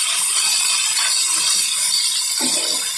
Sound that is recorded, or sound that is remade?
recorded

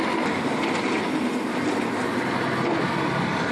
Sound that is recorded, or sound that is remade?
recorded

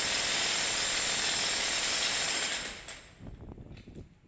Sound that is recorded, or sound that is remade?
recorded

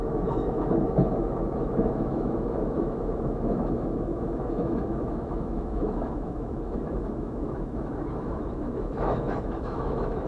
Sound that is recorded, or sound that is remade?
remade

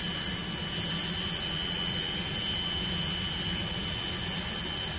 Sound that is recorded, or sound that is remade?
recorded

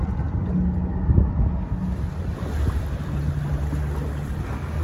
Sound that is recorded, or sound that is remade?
recorded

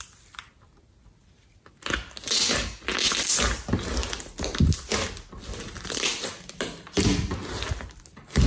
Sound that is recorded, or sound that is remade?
recorded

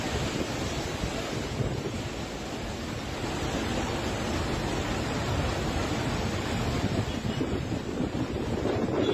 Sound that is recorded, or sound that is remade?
recorded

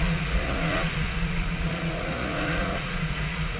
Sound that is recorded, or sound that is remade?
remade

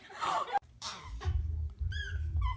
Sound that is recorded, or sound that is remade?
remade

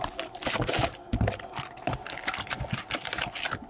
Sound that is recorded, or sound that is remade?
recorded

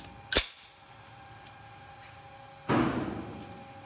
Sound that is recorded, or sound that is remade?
recorded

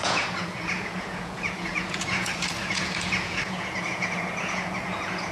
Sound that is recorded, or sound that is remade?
remade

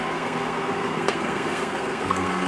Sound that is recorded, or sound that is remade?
remade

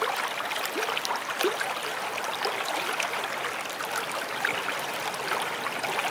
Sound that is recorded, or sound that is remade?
recorded